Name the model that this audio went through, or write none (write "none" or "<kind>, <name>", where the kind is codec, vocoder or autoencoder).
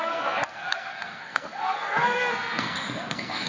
codec, SNAC